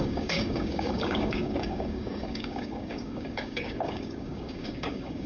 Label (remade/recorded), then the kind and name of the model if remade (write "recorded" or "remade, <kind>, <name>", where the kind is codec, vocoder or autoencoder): remade, codec, DAC